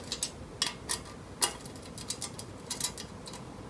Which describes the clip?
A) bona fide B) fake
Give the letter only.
A